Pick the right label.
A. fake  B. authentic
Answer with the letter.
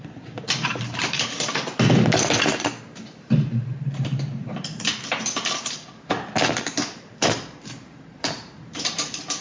A